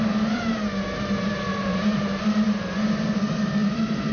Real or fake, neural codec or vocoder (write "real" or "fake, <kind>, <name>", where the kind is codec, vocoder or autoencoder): fake, vocoder, BigVGAN v2